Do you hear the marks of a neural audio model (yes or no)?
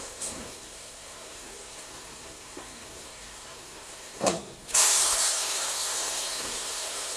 yes